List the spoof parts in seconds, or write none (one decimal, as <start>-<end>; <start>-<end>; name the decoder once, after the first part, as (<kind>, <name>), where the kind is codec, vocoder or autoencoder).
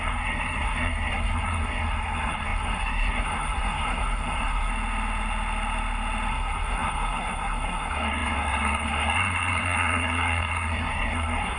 0.0-4.7 (codec, SNAC); 6.3-11.6